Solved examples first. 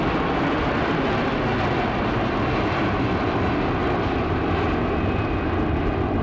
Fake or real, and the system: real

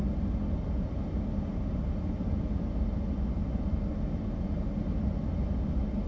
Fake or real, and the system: real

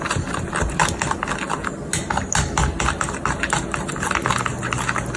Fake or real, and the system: real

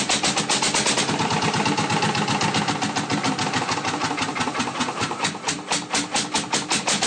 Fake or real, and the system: real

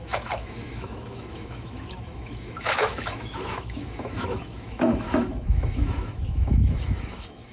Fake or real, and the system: fake, autoencoder, DAC-VAE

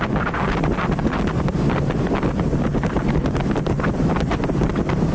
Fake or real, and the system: real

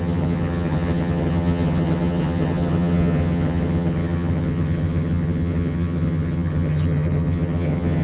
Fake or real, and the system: fake, vocoder, HiFi-GAN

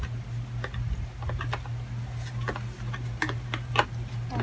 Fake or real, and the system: real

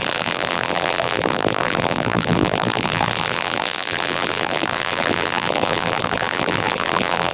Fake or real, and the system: fake, vocoder, BigVGAN v2